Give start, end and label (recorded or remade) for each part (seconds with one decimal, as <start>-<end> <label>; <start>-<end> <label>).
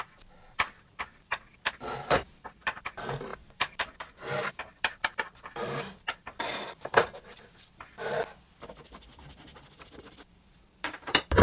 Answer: 0.0-11.4 remade